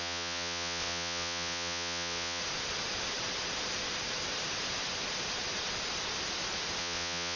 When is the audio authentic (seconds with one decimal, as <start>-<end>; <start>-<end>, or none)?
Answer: 2.4-6.8